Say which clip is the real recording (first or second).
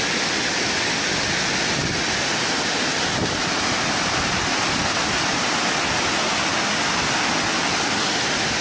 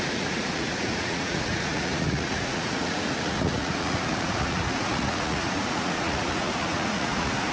first